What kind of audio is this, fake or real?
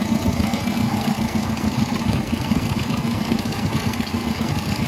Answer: fake